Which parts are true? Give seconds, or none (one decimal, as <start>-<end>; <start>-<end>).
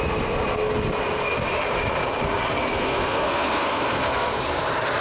0.0-2.8; 4.4-5.0